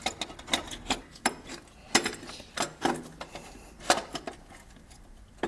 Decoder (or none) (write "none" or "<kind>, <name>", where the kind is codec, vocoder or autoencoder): none